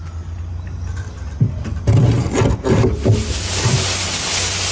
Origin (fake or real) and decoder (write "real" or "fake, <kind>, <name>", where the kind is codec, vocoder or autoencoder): real